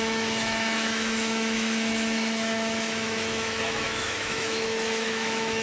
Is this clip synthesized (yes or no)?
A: yes